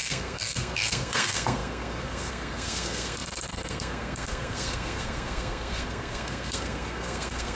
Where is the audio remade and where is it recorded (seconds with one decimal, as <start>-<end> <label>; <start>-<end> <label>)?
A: 0.0-7.6 remade